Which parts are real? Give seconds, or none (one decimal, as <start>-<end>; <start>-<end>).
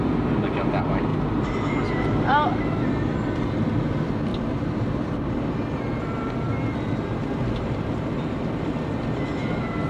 0.0-1.1; 1.8-4.3; 5.3-9.9